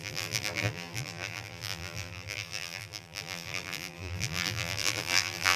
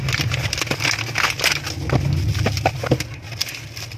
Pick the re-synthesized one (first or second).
first